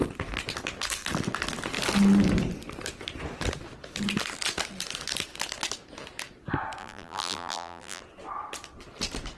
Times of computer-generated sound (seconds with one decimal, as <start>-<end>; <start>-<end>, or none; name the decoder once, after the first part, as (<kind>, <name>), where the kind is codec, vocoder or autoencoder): 6.8-8.0 (vocoder, BigVGAN v2)